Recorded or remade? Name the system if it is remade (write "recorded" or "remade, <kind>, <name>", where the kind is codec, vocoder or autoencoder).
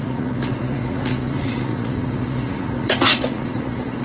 remade, vocoder, Vocos